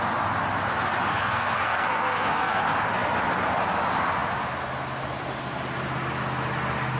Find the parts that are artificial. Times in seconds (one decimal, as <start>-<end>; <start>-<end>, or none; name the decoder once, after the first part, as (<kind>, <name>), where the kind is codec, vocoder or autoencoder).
1.1-2.6 (codec, SNAC)